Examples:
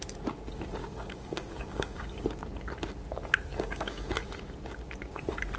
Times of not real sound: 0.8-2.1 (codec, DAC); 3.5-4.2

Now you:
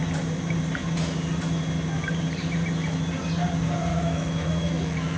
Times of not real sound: 3.9-5.2 (autoencoder, DAC-VAE)

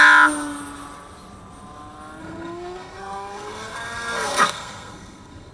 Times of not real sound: 2.2-5.5 (codec, SNAC)